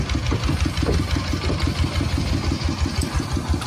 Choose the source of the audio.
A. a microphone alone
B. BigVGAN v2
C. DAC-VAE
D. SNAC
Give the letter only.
A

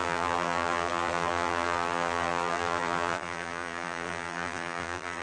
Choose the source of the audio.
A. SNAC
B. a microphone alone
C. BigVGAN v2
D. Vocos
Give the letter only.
C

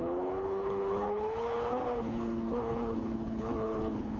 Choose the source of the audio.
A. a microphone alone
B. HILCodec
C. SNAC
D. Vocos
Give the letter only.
B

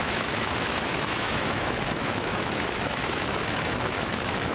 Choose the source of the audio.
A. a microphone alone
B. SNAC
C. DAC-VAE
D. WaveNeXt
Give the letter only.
C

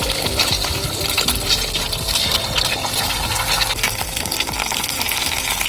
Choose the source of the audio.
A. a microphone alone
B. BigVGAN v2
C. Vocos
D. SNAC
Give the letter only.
A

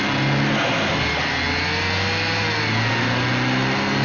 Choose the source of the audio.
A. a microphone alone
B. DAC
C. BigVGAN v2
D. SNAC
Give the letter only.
A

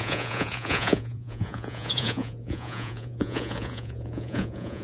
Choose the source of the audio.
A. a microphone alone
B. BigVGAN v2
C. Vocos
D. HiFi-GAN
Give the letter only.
C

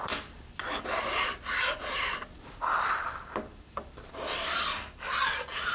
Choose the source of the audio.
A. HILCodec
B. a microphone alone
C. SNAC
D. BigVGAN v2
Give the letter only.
D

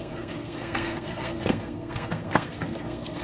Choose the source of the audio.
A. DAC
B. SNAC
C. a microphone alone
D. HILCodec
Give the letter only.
B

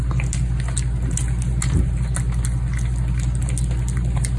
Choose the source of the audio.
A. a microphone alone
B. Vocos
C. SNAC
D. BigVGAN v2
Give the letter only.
A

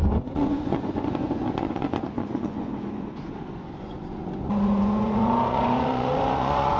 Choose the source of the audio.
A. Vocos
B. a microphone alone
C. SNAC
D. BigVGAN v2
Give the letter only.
A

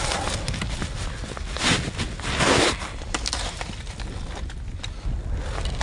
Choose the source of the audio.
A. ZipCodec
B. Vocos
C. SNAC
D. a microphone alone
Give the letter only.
D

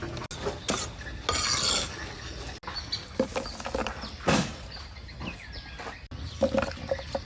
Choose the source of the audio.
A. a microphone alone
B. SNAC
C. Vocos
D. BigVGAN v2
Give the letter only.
A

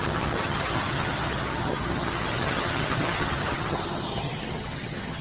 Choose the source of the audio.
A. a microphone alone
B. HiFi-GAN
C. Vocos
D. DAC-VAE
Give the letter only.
B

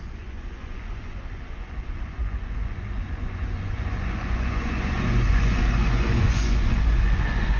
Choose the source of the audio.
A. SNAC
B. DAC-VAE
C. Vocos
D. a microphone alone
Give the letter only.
C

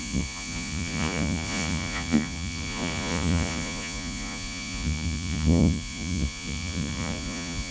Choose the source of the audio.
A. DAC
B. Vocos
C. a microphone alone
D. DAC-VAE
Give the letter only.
B